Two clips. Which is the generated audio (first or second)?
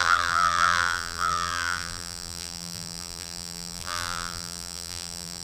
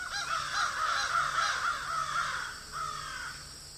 first